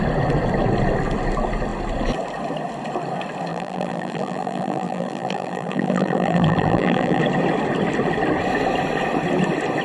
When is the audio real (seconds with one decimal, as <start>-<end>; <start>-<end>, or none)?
0.0-3.5; 7.2-9.8